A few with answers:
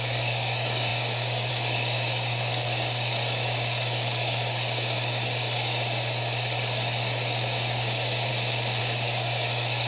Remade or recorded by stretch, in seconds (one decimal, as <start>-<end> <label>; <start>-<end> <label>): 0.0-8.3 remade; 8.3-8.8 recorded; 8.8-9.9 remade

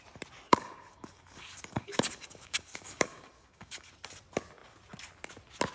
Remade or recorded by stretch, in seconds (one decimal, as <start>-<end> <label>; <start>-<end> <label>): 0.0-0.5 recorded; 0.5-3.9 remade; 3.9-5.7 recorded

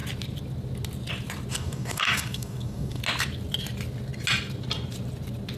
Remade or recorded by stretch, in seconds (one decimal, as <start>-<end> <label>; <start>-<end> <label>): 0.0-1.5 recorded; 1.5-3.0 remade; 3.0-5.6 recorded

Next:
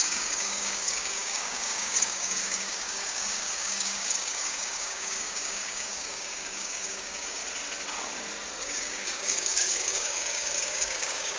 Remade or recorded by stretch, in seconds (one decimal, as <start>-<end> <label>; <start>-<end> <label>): 0.0-7.4 remade; 7.4-8.6 recorded; 8.6-11.4 remade

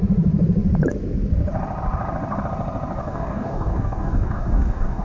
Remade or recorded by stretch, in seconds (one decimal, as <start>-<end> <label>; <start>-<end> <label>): 0.0-3.0 recorded; 3.0-5.0 remade